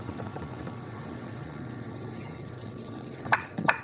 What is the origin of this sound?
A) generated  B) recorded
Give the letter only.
A